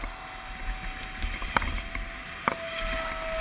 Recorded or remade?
recorded